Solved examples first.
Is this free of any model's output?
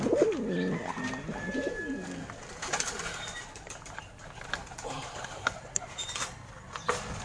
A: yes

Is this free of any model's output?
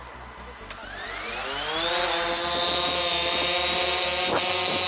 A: yes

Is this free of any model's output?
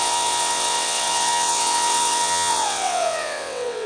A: no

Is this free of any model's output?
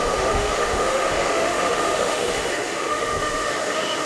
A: no